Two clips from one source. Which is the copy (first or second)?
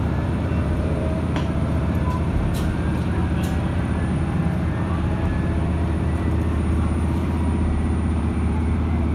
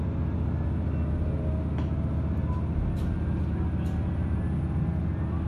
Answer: first